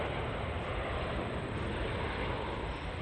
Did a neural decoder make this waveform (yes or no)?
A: no